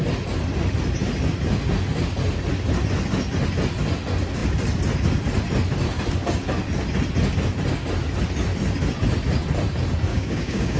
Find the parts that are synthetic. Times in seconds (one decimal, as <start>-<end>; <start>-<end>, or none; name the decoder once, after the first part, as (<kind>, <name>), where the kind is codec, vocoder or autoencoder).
10.1-10.8 (codec, DAC)